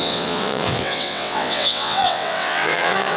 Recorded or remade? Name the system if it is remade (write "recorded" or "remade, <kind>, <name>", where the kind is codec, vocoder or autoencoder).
remade, vocoder, WaveNeXt